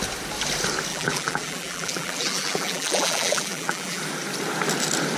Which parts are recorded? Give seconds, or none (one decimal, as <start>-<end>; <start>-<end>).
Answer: 0.0-0.9; 4.0-5.2